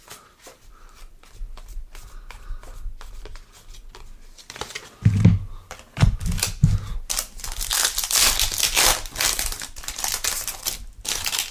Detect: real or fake real